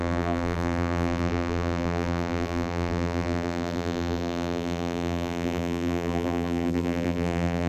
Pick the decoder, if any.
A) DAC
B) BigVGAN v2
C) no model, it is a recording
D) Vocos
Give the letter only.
B